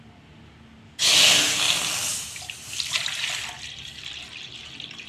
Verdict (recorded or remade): recorded